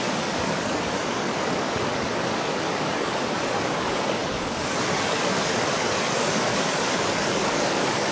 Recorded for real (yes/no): no